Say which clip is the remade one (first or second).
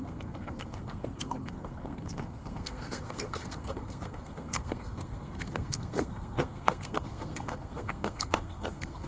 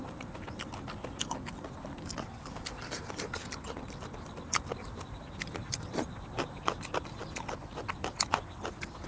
first